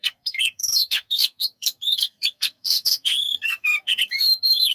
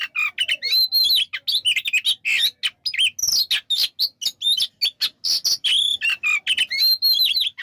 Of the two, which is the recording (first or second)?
second